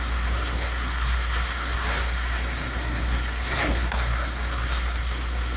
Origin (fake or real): fake